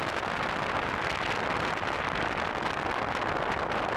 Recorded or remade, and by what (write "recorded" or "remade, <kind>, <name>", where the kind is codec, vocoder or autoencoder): recorded